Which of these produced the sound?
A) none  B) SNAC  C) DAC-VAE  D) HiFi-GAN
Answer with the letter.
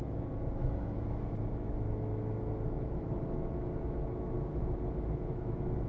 C